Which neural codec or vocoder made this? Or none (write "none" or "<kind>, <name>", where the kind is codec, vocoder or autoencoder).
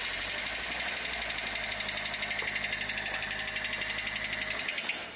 none